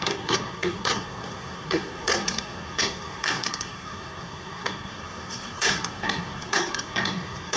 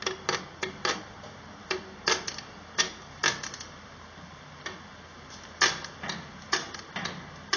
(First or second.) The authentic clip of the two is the second